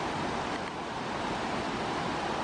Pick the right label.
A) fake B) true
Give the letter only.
B